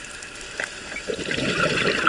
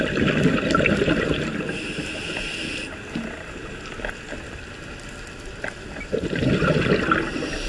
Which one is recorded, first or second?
second